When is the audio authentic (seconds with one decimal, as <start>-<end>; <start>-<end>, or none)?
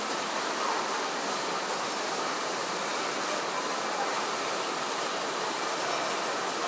0.0-6.7